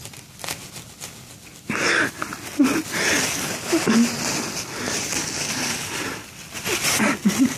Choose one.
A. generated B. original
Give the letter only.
B